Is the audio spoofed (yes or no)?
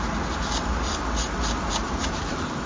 no